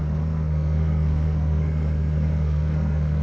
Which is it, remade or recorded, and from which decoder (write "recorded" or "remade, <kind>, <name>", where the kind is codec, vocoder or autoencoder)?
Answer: remade, codec, SNAC